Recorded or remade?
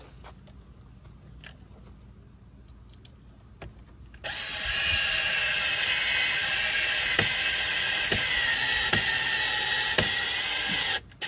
recorded